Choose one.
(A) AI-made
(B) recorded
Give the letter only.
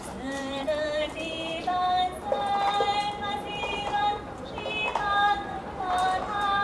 A